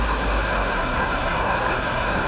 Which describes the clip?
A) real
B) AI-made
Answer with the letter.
B